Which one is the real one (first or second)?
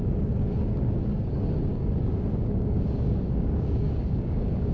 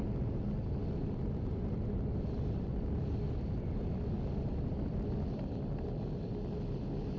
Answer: second